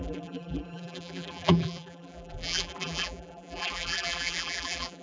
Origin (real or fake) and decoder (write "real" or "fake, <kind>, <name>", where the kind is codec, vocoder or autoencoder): fake, vocoder, BigVGAN v2